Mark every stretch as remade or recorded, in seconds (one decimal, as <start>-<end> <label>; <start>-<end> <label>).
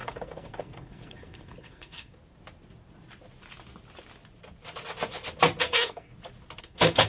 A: 0.0-2.1 remade; 2.1-5.6 recorded; 5.6-6.1 remade; 6.1-6.6 recorded; 6.6-7.1 remade